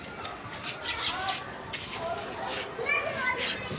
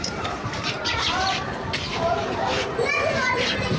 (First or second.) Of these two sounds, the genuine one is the first